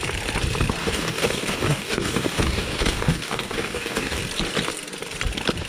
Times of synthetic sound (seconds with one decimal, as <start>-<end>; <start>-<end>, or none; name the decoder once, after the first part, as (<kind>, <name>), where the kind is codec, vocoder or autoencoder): 0.8-4.2 (codec, DAC)